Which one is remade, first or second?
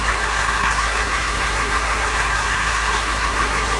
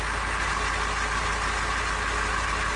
first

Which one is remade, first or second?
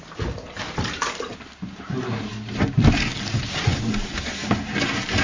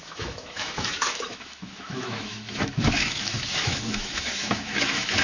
second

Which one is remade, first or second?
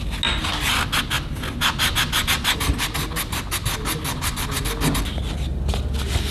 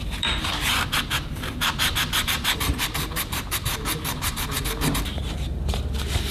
second